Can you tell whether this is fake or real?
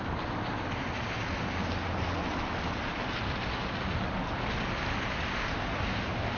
real